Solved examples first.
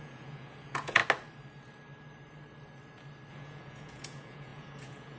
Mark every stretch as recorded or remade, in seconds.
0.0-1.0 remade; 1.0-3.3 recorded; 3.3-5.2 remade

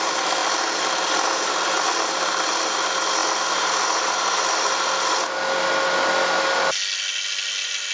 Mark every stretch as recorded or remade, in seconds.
0.0-7.9 recorded

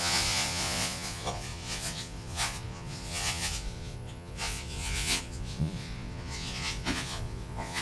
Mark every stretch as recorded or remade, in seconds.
0.0-7.8 remade

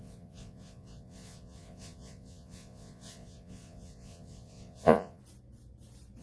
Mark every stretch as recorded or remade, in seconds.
0.0-5.2 remade; 5.2-6.2 recorded

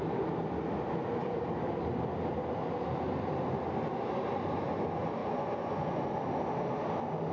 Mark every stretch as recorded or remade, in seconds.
0.0-5.2 recorded; 5.2-6.0 remade; 6.0-7.3 recorded

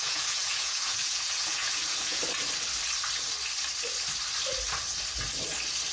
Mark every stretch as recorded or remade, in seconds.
0.0-2.2 remade; 2.2-5.9 recorded